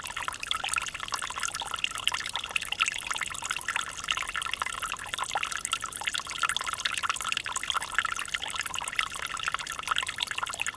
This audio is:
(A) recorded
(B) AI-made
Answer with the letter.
A